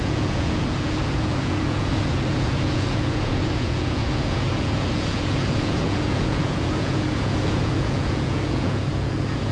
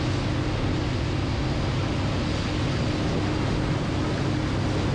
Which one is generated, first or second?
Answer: first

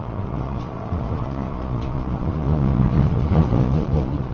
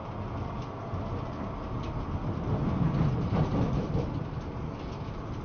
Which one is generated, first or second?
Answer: first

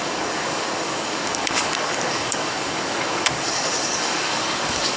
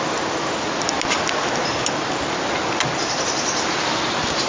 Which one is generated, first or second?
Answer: first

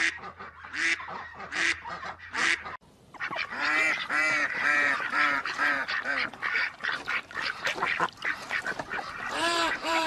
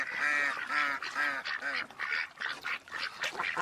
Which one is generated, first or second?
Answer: first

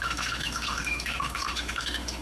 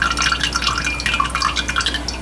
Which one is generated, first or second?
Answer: first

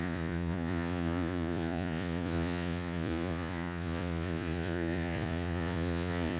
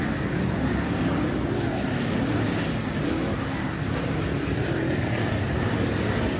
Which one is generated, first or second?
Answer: first